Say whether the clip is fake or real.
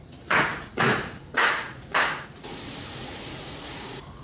fake